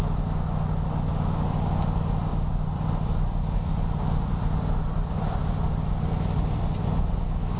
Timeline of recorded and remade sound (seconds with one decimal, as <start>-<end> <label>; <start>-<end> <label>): 0.0-2.3 recorded; 2.3-5.4 remade; 5.4-7.6 recorded